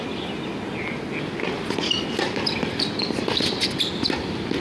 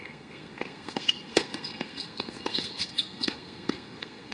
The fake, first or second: second